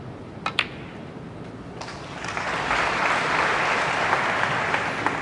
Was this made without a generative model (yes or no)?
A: yes